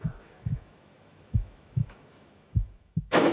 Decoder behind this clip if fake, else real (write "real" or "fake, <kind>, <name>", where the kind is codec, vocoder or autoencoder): fake, autoencoder, DAC-VAE